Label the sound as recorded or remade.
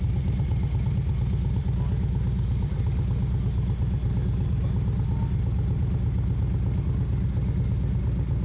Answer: recorded